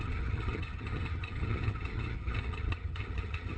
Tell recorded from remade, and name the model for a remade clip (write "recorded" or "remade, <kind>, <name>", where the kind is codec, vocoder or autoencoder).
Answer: remade, vocoder, HiFi-GAN